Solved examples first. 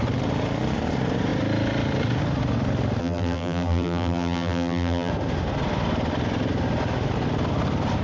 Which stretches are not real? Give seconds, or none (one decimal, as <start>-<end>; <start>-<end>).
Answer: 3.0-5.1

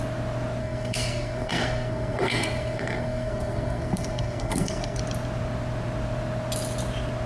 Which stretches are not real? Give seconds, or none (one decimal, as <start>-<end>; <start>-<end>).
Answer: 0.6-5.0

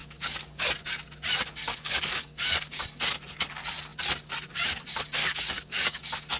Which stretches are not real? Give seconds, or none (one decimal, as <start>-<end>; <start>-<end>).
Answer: 0.0-0.7; 1.6-2.8; 5.2-6.0